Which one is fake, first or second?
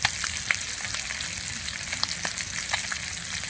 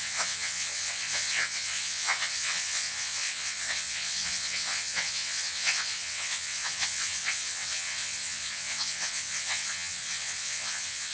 second